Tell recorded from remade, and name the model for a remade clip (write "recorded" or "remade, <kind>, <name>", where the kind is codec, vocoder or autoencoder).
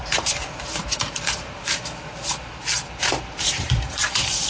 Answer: remade, vocoder, BigVGAN v2